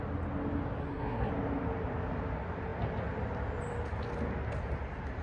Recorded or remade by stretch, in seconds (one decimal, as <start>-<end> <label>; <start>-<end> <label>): 0.0-0.8 recorded; 0.8-1.3 remade; 1.3-5.2 recorded